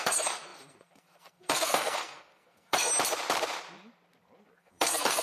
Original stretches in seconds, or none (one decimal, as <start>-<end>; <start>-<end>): 2.9-4.6